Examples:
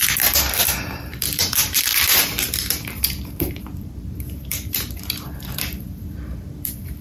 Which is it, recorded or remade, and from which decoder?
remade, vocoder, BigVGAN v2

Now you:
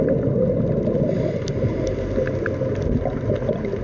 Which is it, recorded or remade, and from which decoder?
recorded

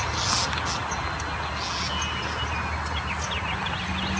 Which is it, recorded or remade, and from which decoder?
recorded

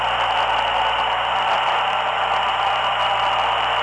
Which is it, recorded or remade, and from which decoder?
recorded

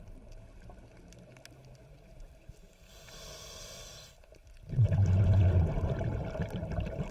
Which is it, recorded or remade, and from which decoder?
recorded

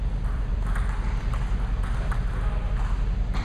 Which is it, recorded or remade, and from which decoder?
recorded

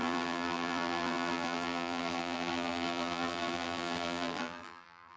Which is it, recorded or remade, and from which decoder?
remade, vocoder, BigVGAN v2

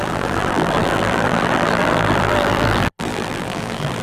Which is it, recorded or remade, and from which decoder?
remade, vocoder, BigVGAN v2